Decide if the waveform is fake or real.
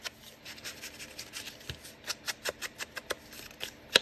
real